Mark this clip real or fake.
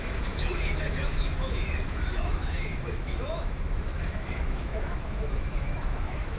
fake